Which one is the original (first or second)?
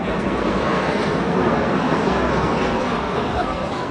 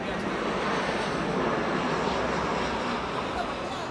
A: second